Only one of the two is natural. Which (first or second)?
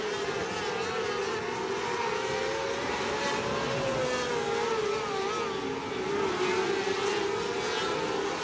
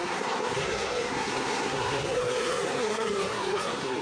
first